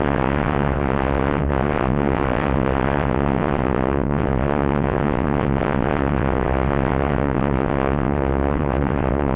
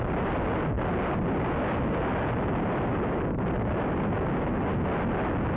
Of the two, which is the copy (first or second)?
first